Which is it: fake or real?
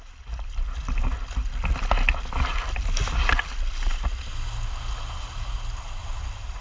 real